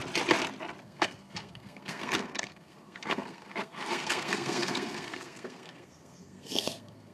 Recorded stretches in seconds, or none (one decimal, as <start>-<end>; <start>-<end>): 0.0-0.8